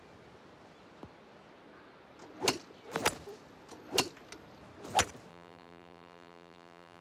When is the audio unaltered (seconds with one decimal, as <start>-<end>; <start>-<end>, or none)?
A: 0.0-5.3